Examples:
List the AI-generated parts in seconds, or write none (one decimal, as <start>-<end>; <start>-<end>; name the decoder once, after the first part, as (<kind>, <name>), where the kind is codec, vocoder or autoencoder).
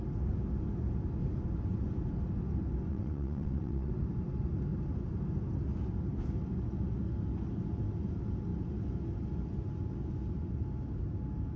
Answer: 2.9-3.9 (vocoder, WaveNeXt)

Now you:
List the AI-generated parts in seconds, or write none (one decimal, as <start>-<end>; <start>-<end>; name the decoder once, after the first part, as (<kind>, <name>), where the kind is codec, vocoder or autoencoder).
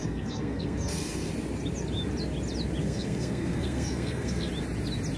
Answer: 0.0-1.3 (codec, SNAC); 2.8-4.5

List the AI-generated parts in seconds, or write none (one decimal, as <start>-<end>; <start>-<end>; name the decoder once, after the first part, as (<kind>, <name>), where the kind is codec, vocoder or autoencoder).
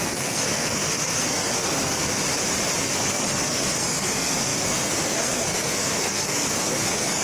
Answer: 0.0-2.2 (codec, SNAC); 2.8-7.2